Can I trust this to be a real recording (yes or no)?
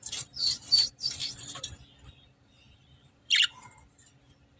no